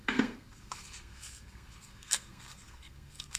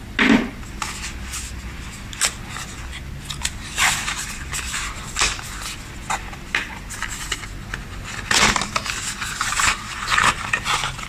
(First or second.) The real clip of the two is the second